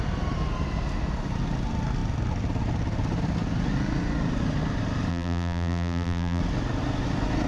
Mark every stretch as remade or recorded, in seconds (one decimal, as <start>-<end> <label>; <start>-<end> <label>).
0.0-5.1 recorded; 5.1-6.4 remade; 6.4-7.5 recorded